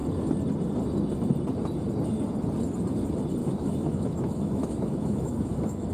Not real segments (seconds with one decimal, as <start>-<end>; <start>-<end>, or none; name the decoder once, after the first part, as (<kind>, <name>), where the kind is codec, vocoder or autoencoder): 3.4-5.9 (autoencoder, DAC-VAE)